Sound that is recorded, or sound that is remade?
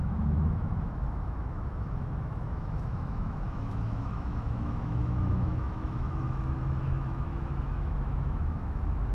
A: remade